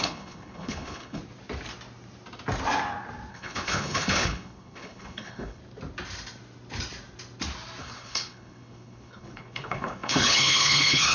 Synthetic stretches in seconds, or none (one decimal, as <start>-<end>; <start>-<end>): 0.0-1.2; 3.3-5.6; 7.8-11.1